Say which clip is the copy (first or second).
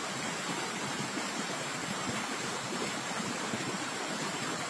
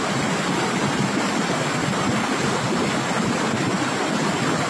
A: first